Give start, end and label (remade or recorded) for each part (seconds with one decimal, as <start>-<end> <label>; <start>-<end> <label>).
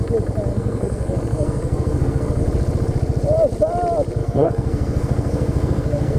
0.0-0.5 recorded; 0.5-2.4 remade; 2.4-4.2 recorded; 4.2-6.2 remade